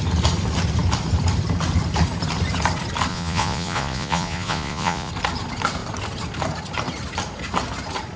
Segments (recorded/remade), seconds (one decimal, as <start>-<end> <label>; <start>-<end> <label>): 0.0-3.1 recorded; 3.1-5.1 remade; 5.1-8.2 recorded